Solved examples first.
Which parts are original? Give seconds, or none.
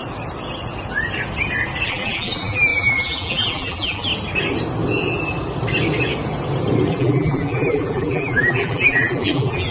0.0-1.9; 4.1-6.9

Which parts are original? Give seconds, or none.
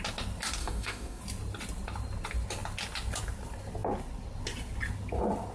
0.0-0.6; 1.2-5.5